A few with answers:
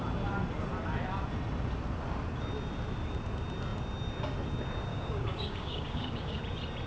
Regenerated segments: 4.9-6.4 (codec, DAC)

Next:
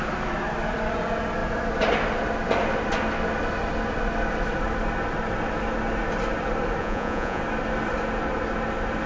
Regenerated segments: 6.8-7.4 (vocoder, Vocos)